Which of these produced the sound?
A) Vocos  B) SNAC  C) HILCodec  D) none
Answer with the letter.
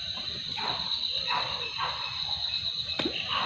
D